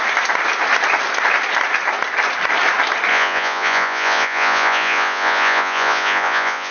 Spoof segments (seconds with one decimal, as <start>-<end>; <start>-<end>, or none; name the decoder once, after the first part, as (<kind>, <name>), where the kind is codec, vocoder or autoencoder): 3.1-6.7 (vocoder, Vocos)